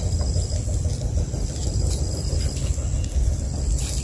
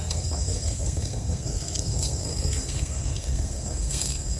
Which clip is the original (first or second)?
first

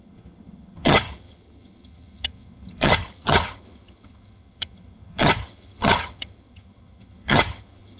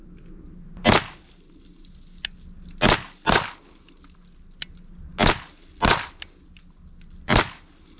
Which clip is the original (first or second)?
second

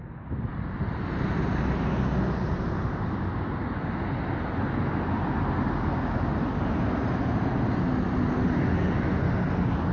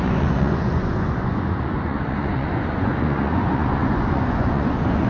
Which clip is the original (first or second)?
first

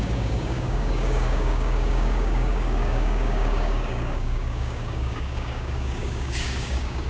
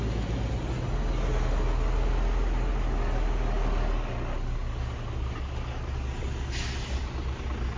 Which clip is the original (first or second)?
second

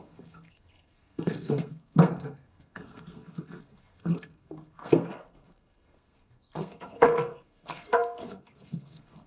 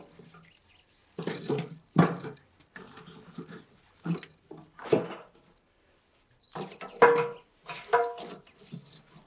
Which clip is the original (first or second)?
second